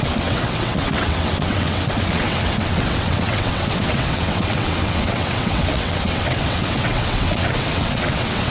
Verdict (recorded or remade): remade